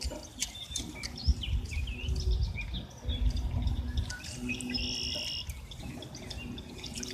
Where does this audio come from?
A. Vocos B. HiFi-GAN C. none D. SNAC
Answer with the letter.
C